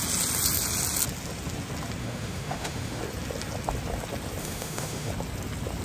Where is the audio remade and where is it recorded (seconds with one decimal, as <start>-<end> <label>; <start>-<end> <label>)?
0.0-2.0 recorded; 2.0-3.0 remade; 3.0-4.4 recorded; 4.4-5.1 remade; 5.1-5.8 recorded